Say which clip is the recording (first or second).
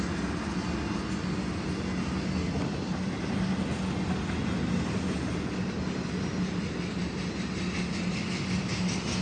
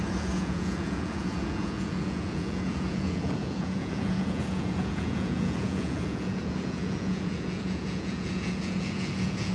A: first